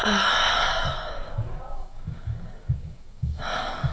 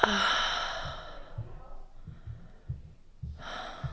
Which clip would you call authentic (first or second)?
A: second